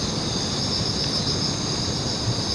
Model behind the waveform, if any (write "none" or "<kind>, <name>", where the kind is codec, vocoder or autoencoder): none